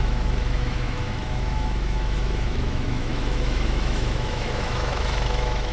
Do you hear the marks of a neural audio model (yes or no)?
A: yes